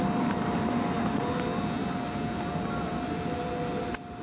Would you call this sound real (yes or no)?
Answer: yes